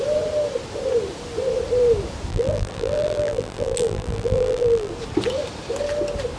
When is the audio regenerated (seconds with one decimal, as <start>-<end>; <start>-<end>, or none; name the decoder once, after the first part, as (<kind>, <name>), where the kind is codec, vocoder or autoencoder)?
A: 2.3-4.9 (vocoder, BigVGAN v2)

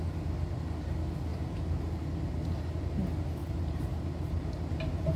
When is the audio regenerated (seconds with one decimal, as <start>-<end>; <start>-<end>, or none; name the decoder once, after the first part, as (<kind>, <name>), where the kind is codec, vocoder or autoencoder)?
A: 1.3-1.9 (vocoder, BigVGAN v2); 3.4-4.8

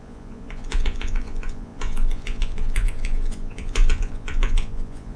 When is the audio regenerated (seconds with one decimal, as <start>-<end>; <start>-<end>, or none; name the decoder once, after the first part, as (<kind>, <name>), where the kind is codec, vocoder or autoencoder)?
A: 0.0-5.2 (vocoder, Vocos)

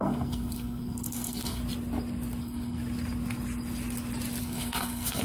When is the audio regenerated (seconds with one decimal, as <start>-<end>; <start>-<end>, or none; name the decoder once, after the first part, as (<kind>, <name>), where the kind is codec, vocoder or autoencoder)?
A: 0.0-1.6 (codec, SNAC); 2.4-2.8; 4.4-5.2